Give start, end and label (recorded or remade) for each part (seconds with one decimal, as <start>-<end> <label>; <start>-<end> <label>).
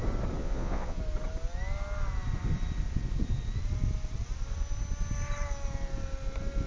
0.0-0.4 recorded; 0.4-1.0 remade; 1.0-6.7 recorded